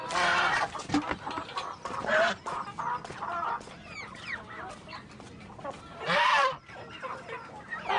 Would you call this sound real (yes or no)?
yes